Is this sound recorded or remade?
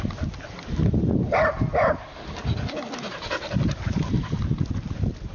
recorded